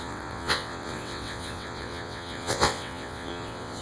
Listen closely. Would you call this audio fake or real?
fake